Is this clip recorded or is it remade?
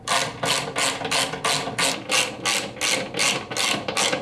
recorded